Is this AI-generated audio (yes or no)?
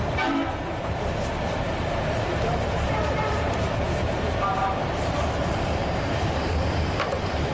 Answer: yes